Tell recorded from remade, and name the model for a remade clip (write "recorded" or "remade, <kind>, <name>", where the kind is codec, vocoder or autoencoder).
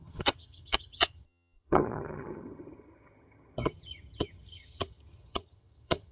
remade, vocoder, HiFi-GAN